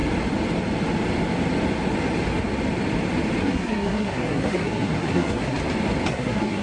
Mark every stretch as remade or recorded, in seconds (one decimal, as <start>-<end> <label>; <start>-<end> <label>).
0.0-3.4 recorded; 3.4-5.6 remade; 5.6-6.1 recorded; 6.1-6.6 remade